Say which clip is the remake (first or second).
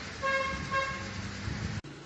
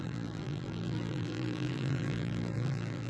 second